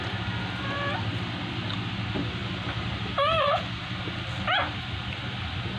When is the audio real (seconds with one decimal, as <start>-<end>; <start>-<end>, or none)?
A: 0.0-5.8